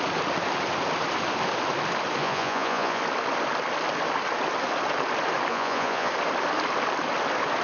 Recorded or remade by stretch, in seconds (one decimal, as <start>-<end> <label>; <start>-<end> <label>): 0.0-2.2 recorded; 2.2-3.0 remade; 3.0-5.5 recorded; 5.5-6.1 remade; 6.1-7.6 recorded